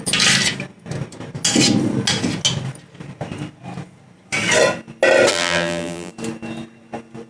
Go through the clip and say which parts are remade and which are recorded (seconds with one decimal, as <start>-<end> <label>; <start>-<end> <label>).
0.0-5.3 recorded; 5.3-6.1 remade; 6.1-7.3 recorded